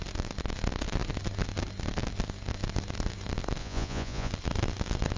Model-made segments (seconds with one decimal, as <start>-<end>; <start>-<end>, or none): 3.6-4.3